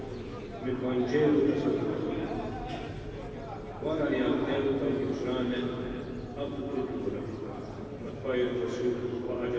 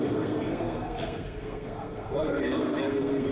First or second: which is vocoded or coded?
second